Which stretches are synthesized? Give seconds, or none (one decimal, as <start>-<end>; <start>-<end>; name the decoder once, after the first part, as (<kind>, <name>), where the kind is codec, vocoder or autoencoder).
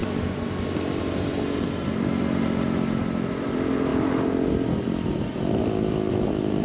none